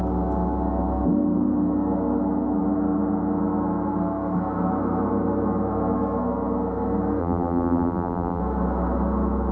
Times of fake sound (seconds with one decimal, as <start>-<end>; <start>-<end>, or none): 7.2-8.4